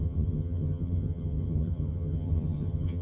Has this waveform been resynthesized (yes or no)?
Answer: yes